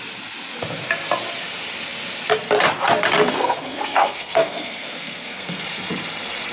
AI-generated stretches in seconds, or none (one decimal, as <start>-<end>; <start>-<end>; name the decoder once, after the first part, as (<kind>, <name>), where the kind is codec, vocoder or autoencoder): 3.3-5.6 (codec, SNAC)